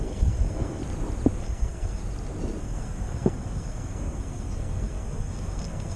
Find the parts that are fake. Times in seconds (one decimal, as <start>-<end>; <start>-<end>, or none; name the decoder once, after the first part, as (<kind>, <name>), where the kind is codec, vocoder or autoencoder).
0.0-0.8 (codec, SNAC); 1.4-2.0; 2.6-6.0